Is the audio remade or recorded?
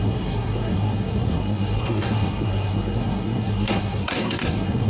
remade